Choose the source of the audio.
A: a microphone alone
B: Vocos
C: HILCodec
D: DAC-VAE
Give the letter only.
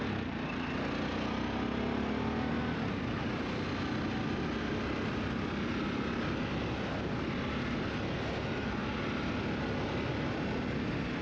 A